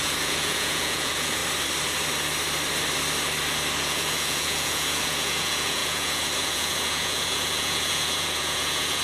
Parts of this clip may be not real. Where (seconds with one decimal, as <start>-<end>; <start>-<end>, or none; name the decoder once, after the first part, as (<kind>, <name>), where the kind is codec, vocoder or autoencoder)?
0.0-1.4 (vocoder, Vocos); 3.8-9.0